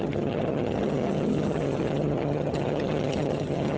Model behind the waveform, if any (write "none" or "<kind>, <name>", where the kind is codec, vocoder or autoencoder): vocoder, HiFi-GAN